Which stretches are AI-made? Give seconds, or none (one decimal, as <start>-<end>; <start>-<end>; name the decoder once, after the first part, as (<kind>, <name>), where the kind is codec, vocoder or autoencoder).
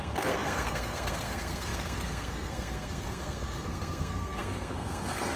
0.0-5.4 (codec, SNAC)